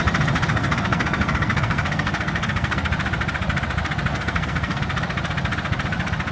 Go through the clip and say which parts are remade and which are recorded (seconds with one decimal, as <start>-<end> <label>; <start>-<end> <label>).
0.0-0.5 recorded; 0.5-2.9 remade; 2.9-4.1 recorded; 4.1-4.8 remade; 4.8-6.3 recorded